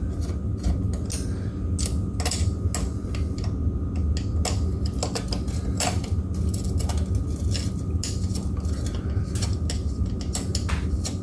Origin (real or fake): real